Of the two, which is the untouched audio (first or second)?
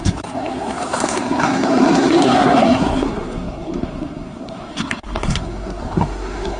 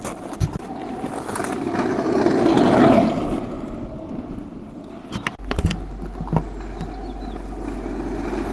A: second